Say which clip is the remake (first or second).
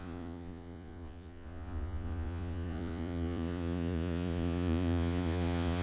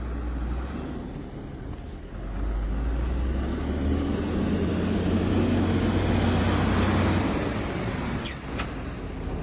first